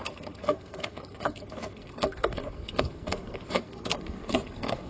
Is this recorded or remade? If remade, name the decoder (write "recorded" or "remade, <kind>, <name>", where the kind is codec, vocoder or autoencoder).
remade, codec, SNAC